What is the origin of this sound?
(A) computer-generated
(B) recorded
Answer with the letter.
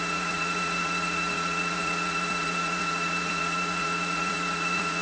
A